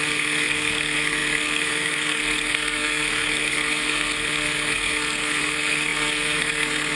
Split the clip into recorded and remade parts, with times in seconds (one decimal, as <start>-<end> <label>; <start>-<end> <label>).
0.0-7.0 remade